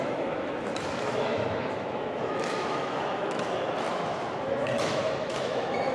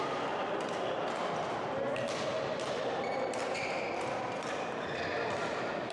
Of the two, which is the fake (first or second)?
first